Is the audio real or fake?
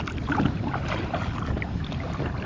real